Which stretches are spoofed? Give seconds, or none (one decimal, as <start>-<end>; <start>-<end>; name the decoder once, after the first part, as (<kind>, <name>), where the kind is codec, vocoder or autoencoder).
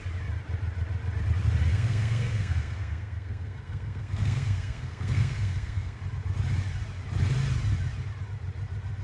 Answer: 1.7-6.0 (codec, SNAC)